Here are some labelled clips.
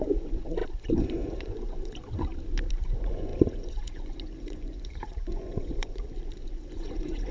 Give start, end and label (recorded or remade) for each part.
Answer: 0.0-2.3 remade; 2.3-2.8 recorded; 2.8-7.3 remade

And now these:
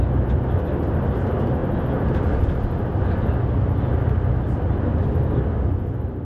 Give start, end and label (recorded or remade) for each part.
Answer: 0.0-6.2 recorded

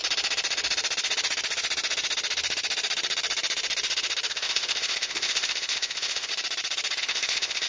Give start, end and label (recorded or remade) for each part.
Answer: 0.0-4.3 recorded; 4.3-6.3 remade; 6.3-7.0 recorded; 7.0-7.7 remade

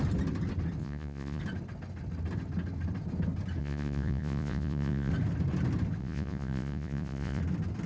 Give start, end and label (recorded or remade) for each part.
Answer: 0.0-0.8 recorded; 0.8-1.4 remade; 1.4-3.6 recorded; 3.6-5.1 remade; 5.1-6.0 recorded; 6.0-7.4 remade; 7.4-7.9 recorded

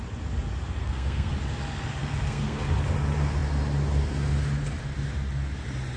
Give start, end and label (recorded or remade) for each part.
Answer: 0.0-0.8 recorded; 0.8-1.3 remade; 1.3-2.0 recorded; 2.0-2.6 remade; 2.6-6.0 recorded

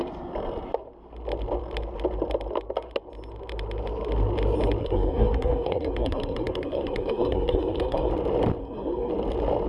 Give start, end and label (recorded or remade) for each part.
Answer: 0.0-4.8 recorded; 4.8-8.1 remade; 8.1-8.6 recorded; 8.6-9.1 remade; 9.1-9.7 recorded

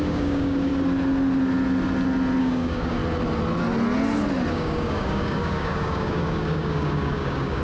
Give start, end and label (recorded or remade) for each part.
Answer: 0.0-0.7 remade; 0.7-2.4 recorded; 2.4-3.0 remade; 3.0-4.5 recorded; 4.5-7.6 remade

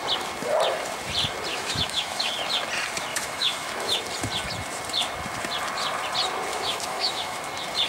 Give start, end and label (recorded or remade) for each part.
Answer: 0.0-1.5 recorded; 1.5-2.3 remade; 2.3-3.1 recorded; 3.1-4.0 remade; 4.0-6.5 recorded; 6.5-7.4 remade; 7.4-7.9 recorded